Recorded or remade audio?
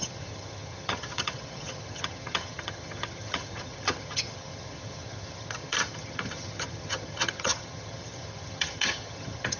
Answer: remade